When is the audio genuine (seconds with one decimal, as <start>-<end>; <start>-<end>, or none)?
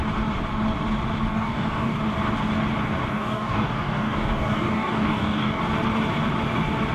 0.0-1.3; 2.0-3.1; 5.6-6.9